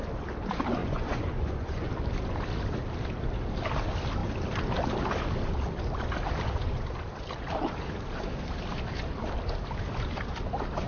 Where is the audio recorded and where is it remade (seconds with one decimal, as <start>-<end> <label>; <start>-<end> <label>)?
0.0-0.8 recorded; 0.8-1.9 remade; 1.9-10.9 recorded